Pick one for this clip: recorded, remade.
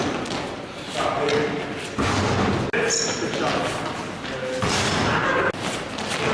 recorded